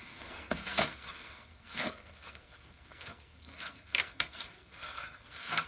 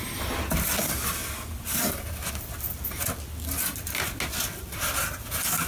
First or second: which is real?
second